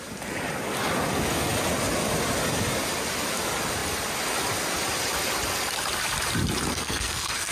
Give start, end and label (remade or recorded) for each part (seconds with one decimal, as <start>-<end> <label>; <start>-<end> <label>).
0.0-6.7 recorded; 6.7-7.5 remade